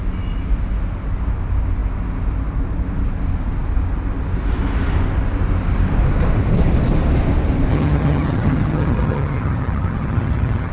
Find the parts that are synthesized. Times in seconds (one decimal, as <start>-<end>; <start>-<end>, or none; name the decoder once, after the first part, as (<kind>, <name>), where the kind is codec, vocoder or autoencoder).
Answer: 7.7-10.7 (vocoder, HiFi-GAN)

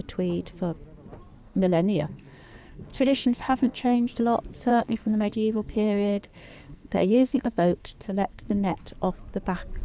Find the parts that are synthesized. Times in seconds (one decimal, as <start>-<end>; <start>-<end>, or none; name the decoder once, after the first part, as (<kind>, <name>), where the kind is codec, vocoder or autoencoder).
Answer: 1.4-4.2 (codec, SNAC); 4.7-8.8

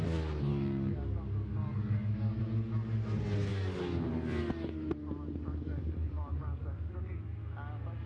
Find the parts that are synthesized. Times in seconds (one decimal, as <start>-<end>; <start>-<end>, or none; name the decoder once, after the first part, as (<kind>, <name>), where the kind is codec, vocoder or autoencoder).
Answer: 0.5-2.4 (codec, DAC); 3.5-4.1; 5.5-7.1